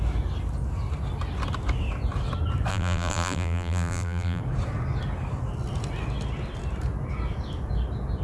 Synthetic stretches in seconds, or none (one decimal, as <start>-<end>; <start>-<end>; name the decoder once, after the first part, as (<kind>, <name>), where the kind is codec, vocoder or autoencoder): 2.7-4.4 (vocoder, BigVGAN v2)